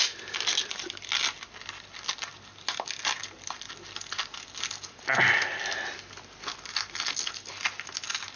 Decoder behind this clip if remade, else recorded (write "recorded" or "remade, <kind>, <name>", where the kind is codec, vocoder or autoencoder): recorded